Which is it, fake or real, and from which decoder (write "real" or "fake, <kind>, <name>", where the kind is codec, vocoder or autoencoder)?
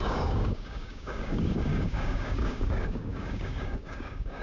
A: fake, codec, DAC